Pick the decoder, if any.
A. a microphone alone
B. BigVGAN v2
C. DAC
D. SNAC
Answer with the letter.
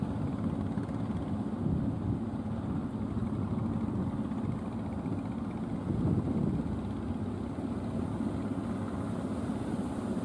A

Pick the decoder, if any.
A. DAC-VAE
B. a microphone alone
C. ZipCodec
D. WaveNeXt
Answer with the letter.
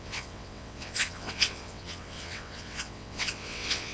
D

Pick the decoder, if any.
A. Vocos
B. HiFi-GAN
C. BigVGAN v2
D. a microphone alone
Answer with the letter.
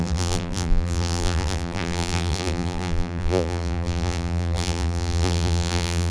C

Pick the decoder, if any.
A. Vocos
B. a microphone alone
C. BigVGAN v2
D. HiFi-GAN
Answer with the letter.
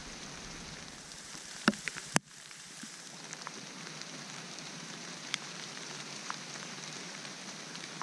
C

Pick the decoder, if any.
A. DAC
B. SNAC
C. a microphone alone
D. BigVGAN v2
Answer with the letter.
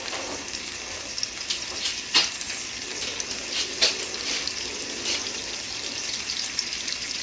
C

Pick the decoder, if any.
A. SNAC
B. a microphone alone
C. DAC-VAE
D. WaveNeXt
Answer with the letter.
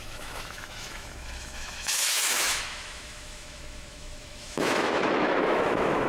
C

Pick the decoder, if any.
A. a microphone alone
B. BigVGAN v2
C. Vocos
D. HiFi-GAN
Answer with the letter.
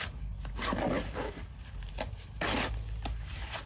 A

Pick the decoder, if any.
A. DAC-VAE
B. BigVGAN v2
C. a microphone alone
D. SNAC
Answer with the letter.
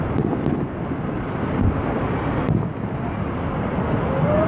C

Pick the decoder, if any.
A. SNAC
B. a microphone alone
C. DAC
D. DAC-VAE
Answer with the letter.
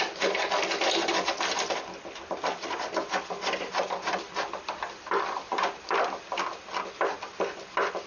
B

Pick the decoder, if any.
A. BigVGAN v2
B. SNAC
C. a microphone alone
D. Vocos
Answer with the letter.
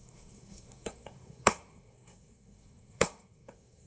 B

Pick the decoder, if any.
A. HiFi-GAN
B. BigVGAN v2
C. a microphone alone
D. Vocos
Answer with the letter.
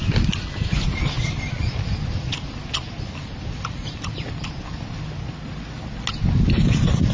C